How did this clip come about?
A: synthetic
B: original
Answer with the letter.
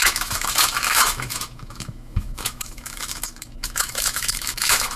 A